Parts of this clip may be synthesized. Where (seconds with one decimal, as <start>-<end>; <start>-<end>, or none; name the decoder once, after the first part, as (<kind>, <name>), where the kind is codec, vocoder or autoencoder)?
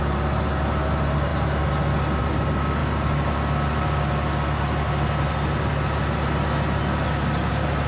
none